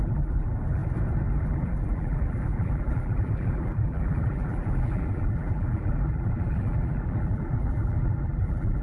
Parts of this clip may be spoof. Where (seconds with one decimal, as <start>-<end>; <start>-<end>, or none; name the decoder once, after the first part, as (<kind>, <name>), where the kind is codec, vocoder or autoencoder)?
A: 0.0-0.8 (vocoder, BigVGAN v2); 1.4-8.8